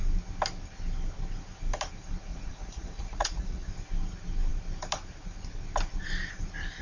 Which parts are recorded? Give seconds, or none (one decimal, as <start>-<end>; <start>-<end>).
0.0-2.3; 3.7-6.8